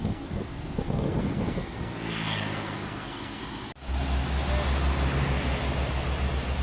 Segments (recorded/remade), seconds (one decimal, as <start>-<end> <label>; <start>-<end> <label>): 0.0-3.4 remade; 3.4-6.6 recorded